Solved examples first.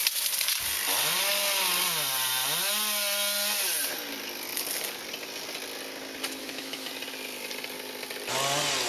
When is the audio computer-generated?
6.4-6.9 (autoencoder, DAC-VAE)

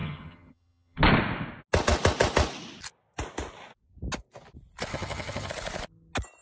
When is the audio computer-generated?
0.0-1.0 (vocoder, HiFi-GAN); 4.9-5.5